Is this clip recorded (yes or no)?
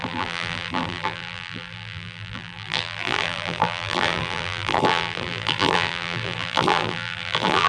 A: no